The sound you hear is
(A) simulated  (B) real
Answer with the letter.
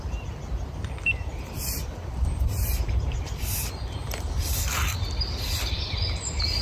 A